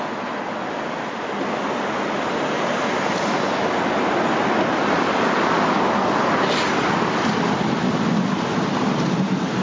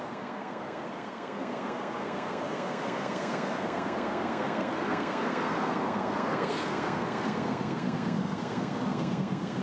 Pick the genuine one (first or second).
first